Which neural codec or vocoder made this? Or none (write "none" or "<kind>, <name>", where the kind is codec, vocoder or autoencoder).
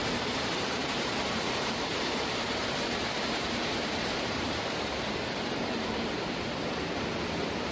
vocoder, BigVGAN v2